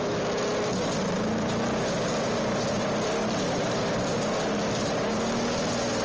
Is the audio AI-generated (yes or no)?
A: yes